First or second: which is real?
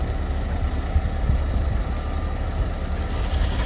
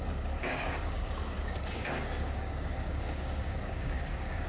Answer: first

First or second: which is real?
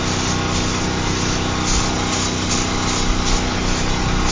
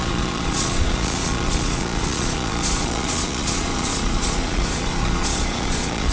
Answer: first